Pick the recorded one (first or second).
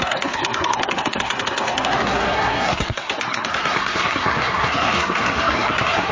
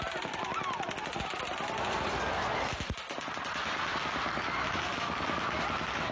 second